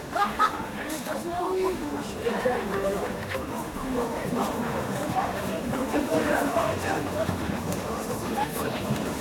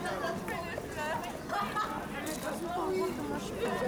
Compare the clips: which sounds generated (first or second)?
first